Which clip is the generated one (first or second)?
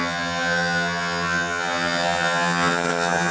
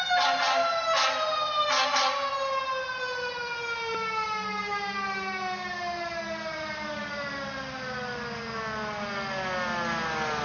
first